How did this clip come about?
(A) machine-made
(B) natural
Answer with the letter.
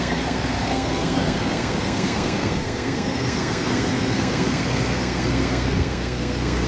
A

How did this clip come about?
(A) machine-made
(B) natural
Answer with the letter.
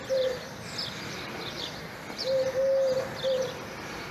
B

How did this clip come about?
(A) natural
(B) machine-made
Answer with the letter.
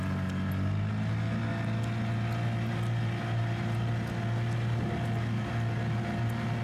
A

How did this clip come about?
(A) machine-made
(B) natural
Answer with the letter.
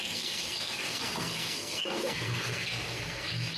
A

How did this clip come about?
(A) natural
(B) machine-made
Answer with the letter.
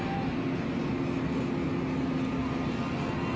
A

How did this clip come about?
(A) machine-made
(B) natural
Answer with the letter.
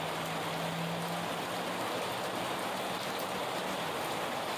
B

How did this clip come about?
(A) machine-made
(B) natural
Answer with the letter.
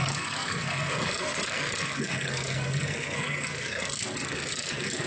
A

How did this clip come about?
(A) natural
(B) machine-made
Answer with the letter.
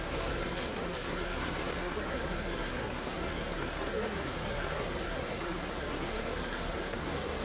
B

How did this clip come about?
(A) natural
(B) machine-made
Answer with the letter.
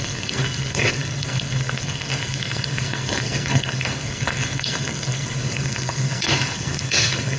B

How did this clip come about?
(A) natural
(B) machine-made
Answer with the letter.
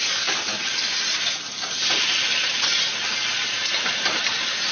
A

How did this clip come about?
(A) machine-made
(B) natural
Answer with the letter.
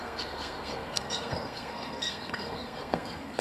A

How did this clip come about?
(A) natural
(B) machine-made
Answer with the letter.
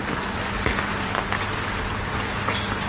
A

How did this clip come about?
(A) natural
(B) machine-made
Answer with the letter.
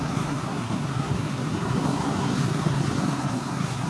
B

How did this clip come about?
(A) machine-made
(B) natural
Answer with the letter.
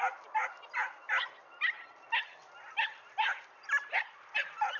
B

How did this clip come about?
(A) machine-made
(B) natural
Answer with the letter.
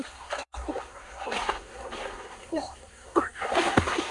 A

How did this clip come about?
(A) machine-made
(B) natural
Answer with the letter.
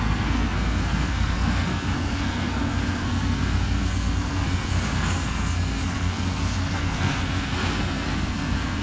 A